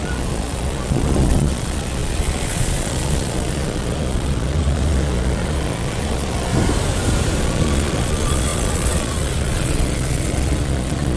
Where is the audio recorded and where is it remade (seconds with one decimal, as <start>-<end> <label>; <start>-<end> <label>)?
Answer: 0.0-6.5 remade; 6.5-7.4 recorded; 7.4-11.2 remade